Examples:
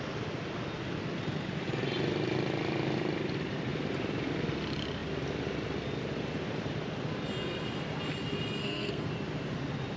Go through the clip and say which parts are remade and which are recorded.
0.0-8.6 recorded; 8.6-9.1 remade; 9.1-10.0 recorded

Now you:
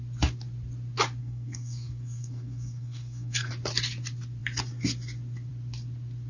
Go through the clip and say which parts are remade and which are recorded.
0.0-1.2 recorded; 1.2-3.5 remade; 3.5-6.3 recorded